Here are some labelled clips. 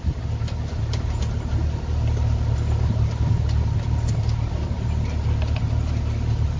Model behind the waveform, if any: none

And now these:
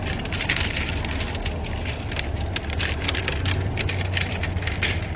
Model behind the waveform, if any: none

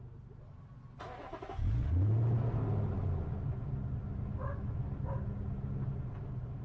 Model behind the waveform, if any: none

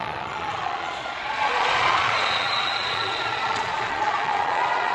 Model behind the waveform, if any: vocoder, Vocos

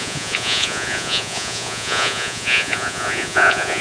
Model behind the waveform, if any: vocoder, Vocos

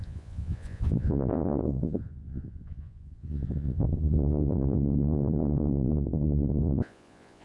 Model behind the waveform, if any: vocoder, Vocos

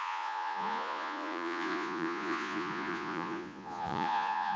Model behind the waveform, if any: vocoder, Vocos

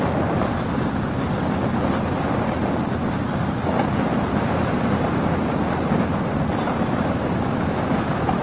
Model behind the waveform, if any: none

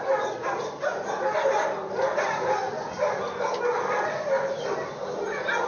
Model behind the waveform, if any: none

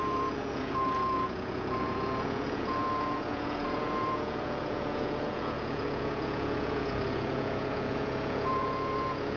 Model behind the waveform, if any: vocoder, Vocos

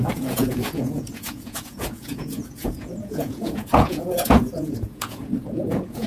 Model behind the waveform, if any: vocoder, Vocos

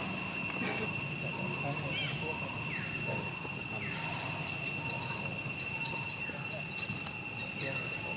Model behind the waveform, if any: none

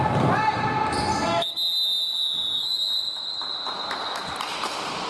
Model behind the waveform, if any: none